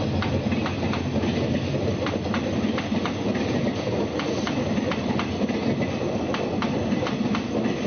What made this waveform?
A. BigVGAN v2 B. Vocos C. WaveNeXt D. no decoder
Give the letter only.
D